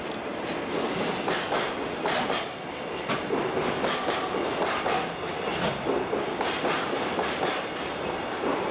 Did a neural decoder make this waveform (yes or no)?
no